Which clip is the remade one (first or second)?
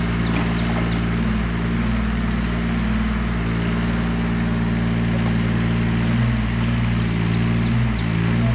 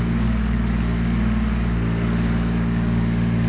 second